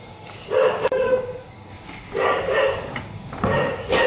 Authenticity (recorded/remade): remade